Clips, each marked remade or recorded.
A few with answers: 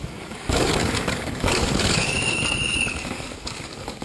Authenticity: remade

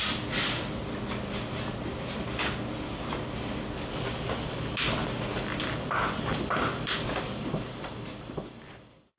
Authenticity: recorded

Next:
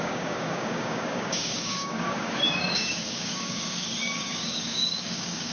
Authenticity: remade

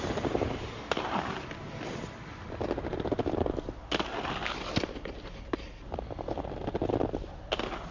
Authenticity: recorded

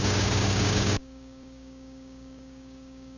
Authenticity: remade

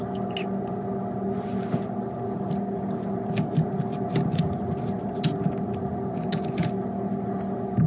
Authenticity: recorded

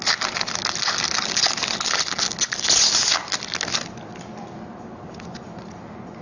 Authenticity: recorded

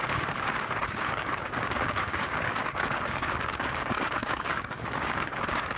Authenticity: remade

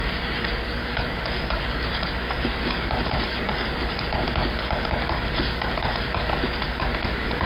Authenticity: remade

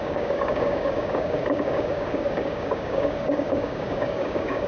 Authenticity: remade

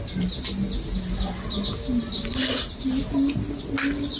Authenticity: recorded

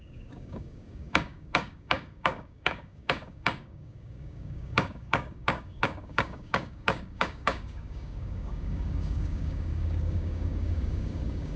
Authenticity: remade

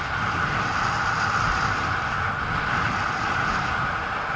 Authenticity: recorded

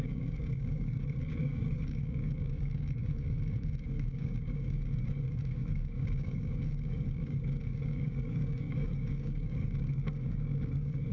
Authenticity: remade